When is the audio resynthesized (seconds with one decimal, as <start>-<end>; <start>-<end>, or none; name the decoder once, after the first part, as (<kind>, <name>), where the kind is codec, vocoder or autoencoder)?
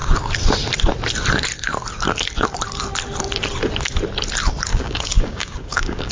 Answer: 4.7-6.1 (codec, DAC)